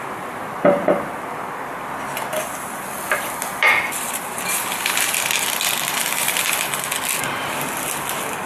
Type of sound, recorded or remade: recorded